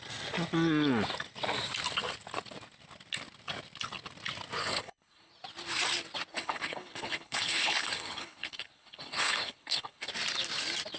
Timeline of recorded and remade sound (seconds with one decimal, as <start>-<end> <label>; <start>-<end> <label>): 0.0-4.6 recorded; 4.6-5.3 remade; 5.3-6.3 recorded; 6.3-10.1 remade; 10.1-11.0 recorded